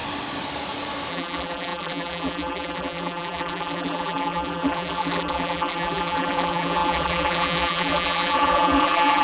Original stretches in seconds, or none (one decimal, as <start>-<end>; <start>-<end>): 0.0-1.1